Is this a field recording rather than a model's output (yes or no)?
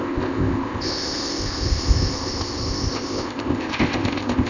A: no